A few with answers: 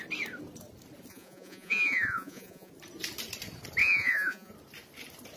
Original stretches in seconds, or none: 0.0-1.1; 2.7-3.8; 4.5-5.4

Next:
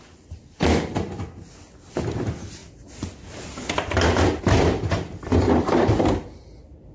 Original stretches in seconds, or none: 0.0-6.9

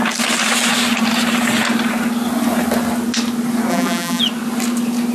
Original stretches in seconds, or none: 0.0-3.7; 4.2-5.1

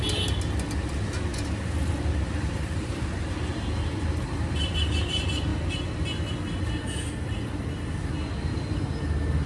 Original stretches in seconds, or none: 0.0-1.3; 3.3-9.5

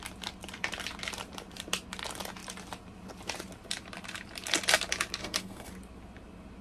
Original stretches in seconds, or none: 0.0-5.2; 5.7-6.6